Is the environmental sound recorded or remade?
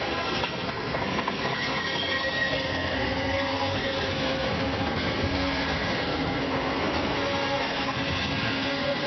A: remade